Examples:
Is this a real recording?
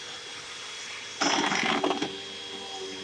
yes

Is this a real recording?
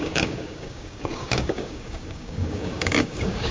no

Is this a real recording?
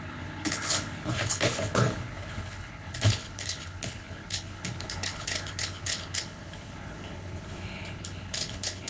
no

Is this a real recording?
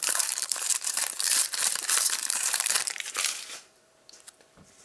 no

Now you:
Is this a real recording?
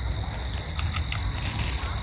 yes